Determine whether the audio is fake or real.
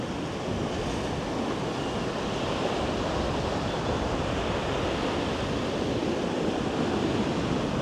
real